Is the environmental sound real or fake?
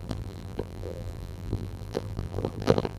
fake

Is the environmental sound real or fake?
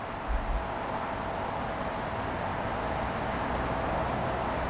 real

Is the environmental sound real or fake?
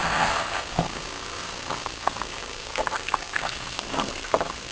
fake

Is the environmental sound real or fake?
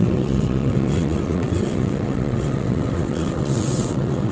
fake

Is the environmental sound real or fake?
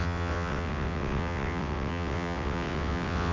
fake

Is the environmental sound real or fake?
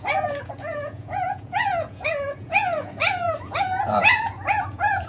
fake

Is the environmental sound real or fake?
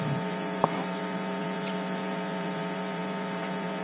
fake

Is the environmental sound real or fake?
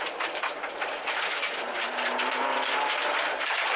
fake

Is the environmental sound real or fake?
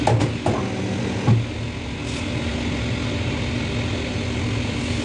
real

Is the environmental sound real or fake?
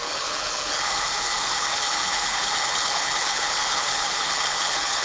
fake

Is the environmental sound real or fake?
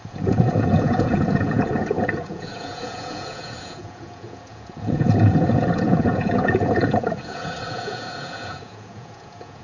fake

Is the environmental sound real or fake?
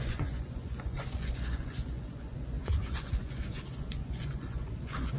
fake